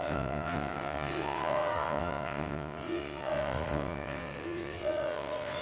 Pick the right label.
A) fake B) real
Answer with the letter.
A